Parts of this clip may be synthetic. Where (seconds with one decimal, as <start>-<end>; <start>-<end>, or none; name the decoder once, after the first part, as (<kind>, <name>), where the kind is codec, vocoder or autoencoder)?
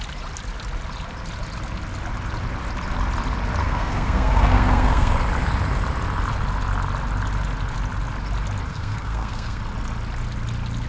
3.6-5.1 (codec, SNAC); 8.7-9.6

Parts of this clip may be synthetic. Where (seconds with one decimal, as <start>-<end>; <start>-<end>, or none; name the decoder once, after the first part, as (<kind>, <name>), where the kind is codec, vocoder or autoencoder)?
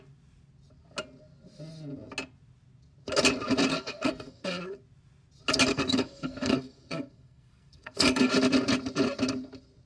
3.7-4.8 (codec, SNAC); 5.7-8.3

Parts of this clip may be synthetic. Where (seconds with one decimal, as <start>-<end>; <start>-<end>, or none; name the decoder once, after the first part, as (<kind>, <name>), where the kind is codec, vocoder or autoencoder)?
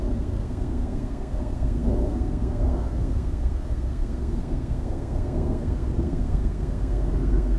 0.0-7.6 (codec, SNAC)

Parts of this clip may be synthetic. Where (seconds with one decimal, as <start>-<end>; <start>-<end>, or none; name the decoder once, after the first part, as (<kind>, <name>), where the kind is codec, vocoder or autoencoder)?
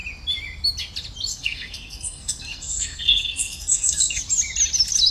1.3-4.2 (codec, SNAC)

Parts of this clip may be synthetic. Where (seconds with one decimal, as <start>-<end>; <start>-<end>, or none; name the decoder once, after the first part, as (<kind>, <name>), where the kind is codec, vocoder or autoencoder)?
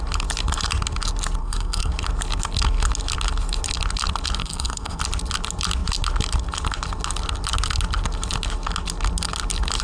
1.4-1.9 (codec, SNAC); 4.4-5.0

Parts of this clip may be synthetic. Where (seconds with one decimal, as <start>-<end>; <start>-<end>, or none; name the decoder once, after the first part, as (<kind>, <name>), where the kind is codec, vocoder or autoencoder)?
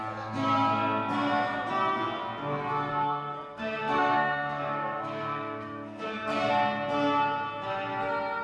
2.9-6.5 (codec, SNAC)